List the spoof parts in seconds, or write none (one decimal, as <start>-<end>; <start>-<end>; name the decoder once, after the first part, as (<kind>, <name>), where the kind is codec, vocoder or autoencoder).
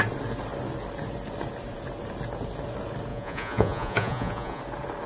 3.1-4.6 (vocoder, Vocos)